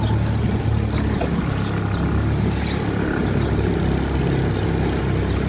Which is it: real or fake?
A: real